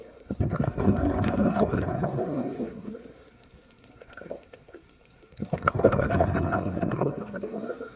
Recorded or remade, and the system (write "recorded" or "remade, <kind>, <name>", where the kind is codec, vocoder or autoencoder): remade, codec, SNAC